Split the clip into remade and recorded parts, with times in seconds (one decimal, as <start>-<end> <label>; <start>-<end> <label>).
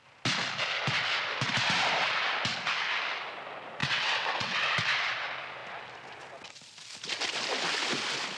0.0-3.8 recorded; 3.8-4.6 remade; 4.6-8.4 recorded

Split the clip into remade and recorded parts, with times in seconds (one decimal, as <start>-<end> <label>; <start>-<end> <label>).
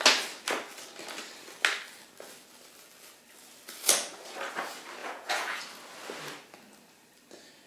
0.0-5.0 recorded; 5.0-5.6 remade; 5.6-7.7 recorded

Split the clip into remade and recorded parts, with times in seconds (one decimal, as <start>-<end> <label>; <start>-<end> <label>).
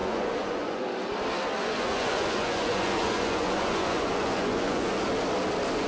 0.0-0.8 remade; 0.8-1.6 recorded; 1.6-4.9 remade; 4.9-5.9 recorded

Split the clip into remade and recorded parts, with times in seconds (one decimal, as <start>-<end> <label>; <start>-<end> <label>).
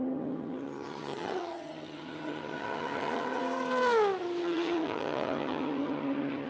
0.0-3.4 remade; 3.4-4.4 recorded; 4.4-6.5 remade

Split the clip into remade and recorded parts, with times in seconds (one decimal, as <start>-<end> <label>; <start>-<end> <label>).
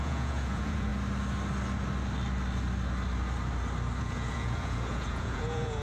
0.0-0.9 remade; 0.9-4.0 recorded; 4.0-5.8 remade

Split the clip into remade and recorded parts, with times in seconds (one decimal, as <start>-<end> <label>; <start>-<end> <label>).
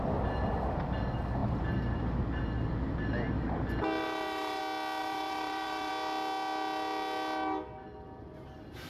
0.0-4.0 recorded; 4.0-4.6 remade; 4.6-5.0 recorded; 5.0-5.9 remade; 5.9-8.9 recorded